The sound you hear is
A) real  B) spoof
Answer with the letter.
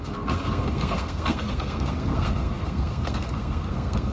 B